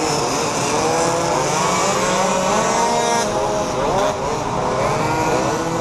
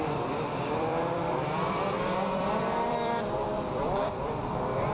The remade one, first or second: second